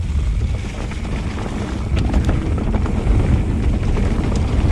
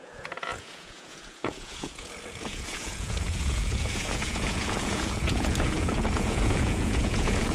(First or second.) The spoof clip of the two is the second